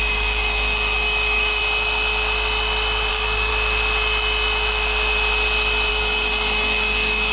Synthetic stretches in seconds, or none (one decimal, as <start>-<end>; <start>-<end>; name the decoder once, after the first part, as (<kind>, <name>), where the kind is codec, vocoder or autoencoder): 0.0-1.6 (codec, DAC); 3.1-3.5; 5.9-7.3

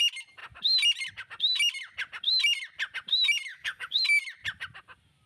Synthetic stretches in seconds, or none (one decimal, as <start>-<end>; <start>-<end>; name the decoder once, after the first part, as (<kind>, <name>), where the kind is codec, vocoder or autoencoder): 3.5-4.0 (codec, DAC)

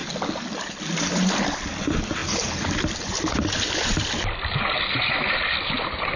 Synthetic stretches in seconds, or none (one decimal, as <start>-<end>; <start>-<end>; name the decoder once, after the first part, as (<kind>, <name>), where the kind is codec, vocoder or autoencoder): none

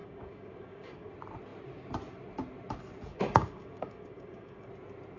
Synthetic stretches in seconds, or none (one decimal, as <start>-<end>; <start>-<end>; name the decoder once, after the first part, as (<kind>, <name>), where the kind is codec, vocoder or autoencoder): 0.0-1.1 (codec, DAC); 3.1-4.7

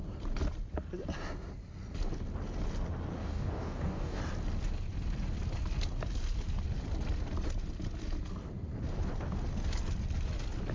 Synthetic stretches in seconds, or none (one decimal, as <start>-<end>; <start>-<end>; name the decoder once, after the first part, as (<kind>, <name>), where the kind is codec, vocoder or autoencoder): 3.2-4.2 (codec, DAC)

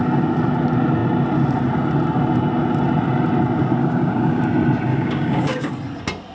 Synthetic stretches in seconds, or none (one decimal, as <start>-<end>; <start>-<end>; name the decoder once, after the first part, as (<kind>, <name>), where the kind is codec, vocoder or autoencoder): 3.8-4.4 (codec, DAC); 4.9-5.7

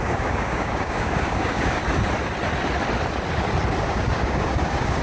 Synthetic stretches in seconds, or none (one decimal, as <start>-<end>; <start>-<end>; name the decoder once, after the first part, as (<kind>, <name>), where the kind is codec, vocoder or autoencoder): 0.0-1.8 (codec, DAC); 3.8-5.0